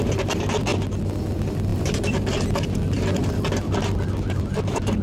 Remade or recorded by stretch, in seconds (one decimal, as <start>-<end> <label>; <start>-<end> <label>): 0.0-5.0 recorded